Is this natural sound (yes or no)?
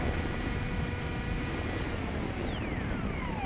no